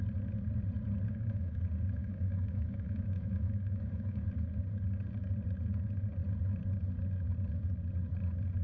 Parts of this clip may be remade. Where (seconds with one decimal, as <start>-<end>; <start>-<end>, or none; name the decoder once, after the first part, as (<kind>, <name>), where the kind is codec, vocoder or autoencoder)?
1.1-1.6 (autoencoder, DAC-VAE); 2.0-4.2

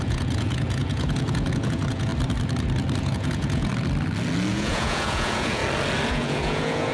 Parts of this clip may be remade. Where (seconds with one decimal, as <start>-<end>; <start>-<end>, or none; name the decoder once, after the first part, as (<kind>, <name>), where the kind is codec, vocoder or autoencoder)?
0.0-2.1 (vocoder, Vocos); 3.0-3.7; 4.5-5.6; 6.1-6.9

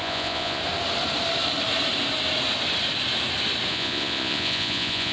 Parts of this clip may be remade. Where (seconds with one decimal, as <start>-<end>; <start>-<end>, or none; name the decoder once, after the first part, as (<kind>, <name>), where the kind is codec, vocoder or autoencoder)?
0.0-0.6 (vocoder, Vocos); 3.7-5.1

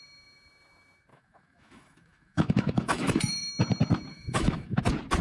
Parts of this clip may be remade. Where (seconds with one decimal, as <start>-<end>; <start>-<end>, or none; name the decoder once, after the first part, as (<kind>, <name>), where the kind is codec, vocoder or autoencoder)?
1.1-3.5 (autoencoder, DAC-VAE); 4.1-4.8

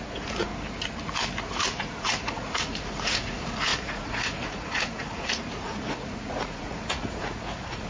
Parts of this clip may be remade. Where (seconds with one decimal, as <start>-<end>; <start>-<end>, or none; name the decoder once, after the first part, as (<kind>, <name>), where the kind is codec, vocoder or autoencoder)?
0.0-0.5 (vocoder, Vocos); 1.4-7.9

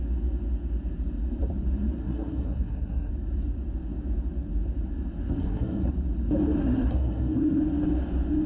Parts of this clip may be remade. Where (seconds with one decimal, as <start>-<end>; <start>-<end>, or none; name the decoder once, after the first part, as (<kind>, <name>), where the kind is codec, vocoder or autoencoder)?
2.0-3.1 (codec, SNAC); 5.4-5.9; 6.6-7.6

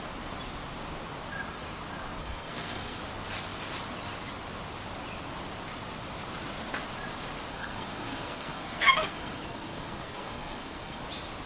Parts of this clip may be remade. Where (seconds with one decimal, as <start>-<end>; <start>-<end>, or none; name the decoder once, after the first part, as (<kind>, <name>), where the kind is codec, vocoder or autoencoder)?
2.2-3.0 (codec, SNAC); 7.5-11.0

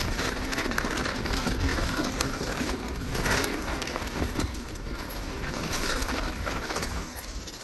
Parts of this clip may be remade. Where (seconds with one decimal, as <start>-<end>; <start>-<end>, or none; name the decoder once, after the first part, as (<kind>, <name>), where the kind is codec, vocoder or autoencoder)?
0.0-7.6 (codec, DAC)